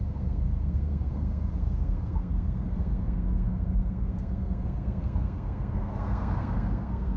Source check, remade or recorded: remade